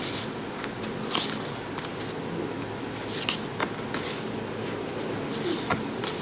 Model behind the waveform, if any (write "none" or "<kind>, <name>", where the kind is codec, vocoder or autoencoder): none